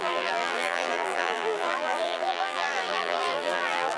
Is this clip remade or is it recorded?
remade